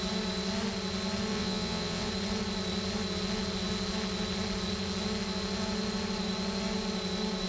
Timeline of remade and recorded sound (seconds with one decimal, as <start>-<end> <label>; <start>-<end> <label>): 0.0-1.3 recorded; 1.3-2.1 remade; 2.1-7.5 recorded